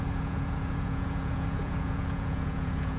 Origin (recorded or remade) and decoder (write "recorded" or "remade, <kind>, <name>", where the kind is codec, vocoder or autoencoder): remade, vocoder, Vocos